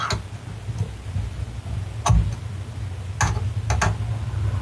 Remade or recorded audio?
recorded